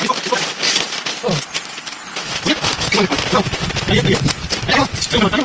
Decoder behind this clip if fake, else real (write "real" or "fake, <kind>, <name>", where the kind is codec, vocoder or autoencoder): real